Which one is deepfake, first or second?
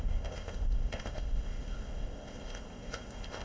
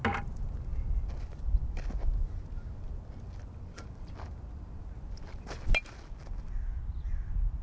first